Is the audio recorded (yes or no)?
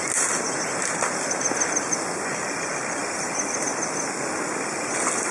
yes